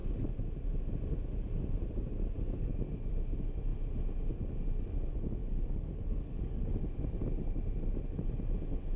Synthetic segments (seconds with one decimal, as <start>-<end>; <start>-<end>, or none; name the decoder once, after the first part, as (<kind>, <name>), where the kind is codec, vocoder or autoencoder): 5.4-6.6 (codec, DAC)